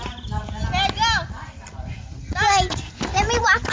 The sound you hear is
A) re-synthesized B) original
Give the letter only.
B